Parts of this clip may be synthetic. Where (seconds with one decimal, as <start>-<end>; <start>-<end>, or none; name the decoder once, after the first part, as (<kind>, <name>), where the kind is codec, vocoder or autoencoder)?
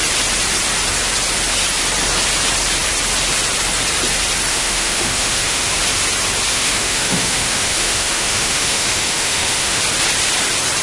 4.5-5.8 (autoencoder, DAC-VAE); 6.5-9.8